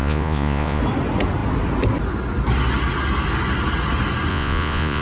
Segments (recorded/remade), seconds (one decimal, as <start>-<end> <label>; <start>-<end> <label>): 0.0-0.8 remade; 0.8-4.3 recorded; 4.3-5.0 remade